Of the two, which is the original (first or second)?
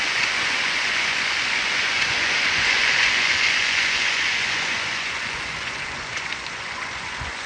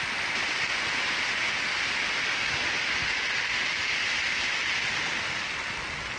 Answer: second